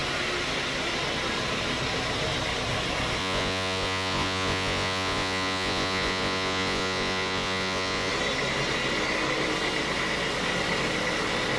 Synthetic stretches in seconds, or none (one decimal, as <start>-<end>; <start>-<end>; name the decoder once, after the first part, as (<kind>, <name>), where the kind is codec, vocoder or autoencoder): 3.2-8.1 (vocoder, Vocos)